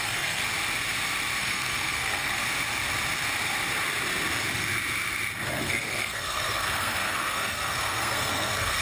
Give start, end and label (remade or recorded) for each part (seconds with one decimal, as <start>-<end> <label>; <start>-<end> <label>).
0.0-0.4 remade; 0.4-1.4 recorded; 1.4-2.4 remade; 2.4-5.5 recorded; 5.5-8.8 remade